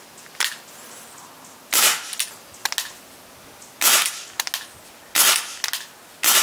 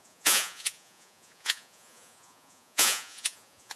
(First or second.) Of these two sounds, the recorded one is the first